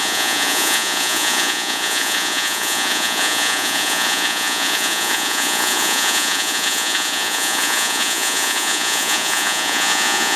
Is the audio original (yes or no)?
no